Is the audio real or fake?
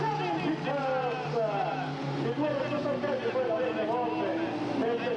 real